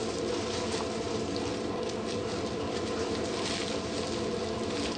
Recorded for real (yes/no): yes